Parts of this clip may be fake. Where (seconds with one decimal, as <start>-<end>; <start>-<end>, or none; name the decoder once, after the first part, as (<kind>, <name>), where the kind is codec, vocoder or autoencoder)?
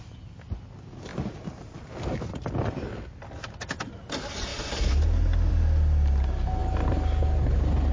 1.1-1.9 (vocoder, BigVGAN v2)